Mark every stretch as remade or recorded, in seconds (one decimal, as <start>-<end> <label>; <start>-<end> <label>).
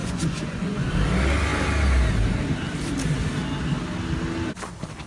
0.0-0.9 remade; 0.9-5.1 recorded